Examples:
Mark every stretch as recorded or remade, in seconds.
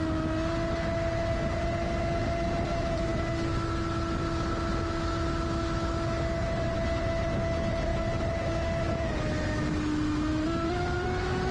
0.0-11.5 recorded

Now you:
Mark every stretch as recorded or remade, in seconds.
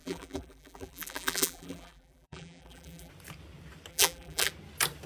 0.0-3.1 remade; 3.1-3.9 recorded; 3.9-4.5 remade; 4.5-5.1 recorded